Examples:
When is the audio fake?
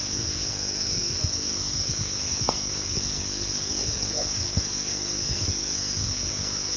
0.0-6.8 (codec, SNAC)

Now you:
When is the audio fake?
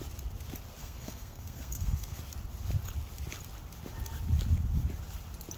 0.8-2.2 (codec, SNAC)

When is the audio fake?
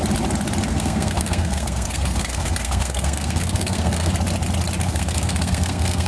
0.7-4.1 (codec, SNAC); 4.8-6.1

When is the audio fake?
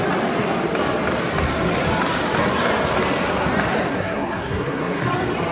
3.9-5.0 (codec, SNAC)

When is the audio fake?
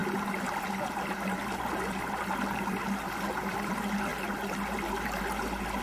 none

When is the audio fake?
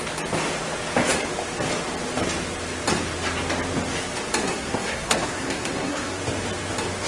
4.4-6.2 (codec, SNAC)